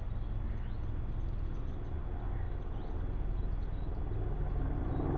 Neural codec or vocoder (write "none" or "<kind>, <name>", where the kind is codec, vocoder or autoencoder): none